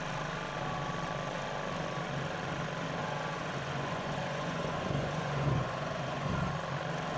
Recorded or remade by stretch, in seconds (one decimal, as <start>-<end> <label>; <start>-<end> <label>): 0.0-3.0 recorded; 3.0-6.3 remade; 6.3-7.2 recorded